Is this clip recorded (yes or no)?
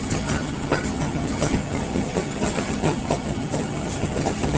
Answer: no